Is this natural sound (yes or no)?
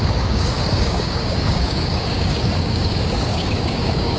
no